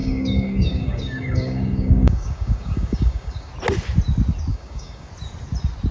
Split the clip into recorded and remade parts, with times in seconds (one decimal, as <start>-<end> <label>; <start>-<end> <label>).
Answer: 0.0-3.5 remade; 3.5-4.5 recorded; 4.5-5.1 remade; 5.1-5.9 recorded